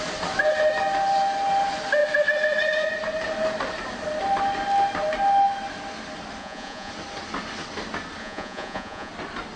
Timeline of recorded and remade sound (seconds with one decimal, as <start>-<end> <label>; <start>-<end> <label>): 0.0-6.4 recorded; 6.4-6.9 remade; 6.9-8.2 recorded; 8.2-9.1 remade; 9.1-9.6 recorded